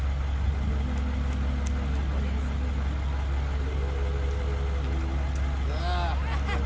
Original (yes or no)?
yes